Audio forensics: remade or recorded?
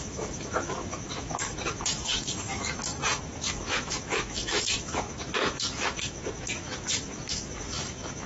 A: remade